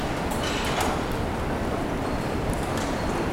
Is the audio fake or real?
real